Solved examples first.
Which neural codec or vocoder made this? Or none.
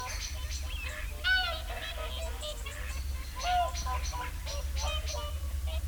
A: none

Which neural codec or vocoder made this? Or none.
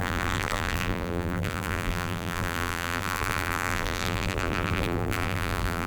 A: vocoder, BigVGAN v2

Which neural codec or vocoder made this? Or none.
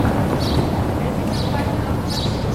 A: none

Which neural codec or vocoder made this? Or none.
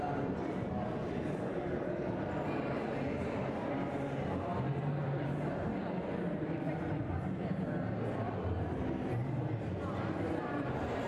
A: vocoder, BigVGAN v2